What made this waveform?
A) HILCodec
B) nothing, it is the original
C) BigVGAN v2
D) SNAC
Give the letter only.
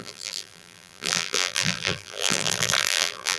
C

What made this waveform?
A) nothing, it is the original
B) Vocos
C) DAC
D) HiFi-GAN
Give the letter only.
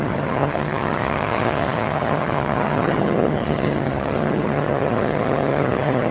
D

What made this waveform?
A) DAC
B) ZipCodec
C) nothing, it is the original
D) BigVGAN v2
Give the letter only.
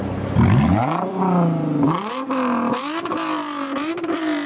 D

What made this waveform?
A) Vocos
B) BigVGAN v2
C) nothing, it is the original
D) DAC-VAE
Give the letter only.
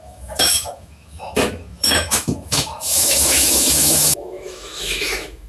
D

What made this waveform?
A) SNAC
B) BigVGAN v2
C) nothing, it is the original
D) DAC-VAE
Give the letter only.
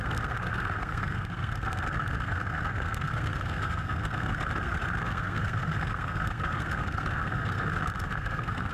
A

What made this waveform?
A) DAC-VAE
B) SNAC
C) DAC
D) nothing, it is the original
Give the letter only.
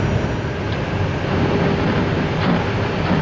D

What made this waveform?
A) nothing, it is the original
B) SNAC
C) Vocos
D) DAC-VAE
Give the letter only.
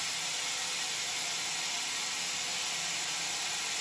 A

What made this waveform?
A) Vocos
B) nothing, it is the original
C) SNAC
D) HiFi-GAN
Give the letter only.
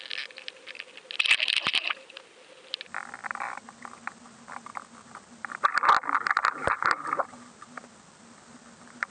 B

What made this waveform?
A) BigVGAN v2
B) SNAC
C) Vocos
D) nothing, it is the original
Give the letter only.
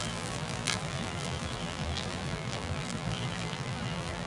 A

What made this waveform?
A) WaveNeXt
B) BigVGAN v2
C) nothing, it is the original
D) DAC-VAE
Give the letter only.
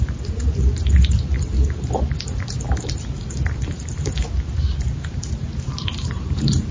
B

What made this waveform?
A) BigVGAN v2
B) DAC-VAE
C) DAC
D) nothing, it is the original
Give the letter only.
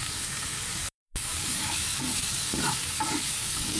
C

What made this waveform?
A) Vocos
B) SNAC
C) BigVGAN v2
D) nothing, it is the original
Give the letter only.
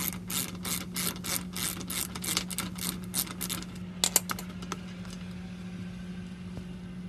D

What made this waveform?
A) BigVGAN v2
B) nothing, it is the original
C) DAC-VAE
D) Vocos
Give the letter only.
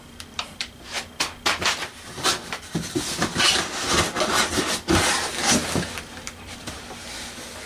B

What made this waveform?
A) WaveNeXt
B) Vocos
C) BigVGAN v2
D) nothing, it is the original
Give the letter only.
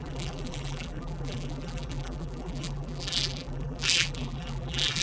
C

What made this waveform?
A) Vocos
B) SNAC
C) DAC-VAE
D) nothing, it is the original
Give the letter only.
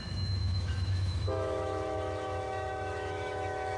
C